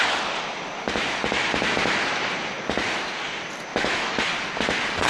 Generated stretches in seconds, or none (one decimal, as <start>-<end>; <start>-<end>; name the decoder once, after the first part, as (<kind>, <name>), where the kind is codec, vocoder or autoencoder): 3.7-4.2 (autoencoder, DAC-VAE)